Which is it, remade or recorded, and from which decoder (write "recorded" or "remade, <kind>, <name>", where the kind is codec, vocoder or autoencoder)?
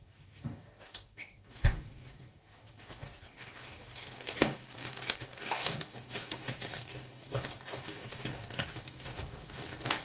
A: remade, codec, DAC